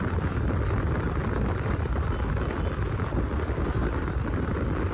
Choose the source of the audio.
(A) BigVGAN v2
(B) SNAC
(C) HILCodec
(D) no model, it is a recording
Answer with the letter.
A